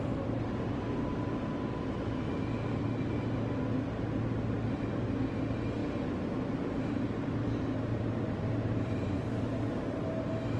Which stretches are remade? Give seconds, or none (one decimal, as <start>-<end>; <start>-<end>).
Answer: none